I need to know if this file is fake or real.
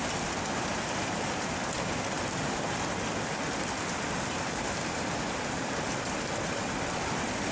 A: real